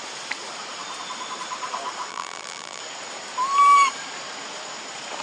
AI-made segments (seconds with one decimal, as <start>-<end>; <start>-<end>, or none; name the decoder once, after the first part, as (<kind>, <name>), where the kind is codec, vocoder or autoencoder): 2.1-2.8 (vocoder, BigVGAN v2)